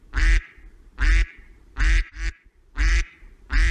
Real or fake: fake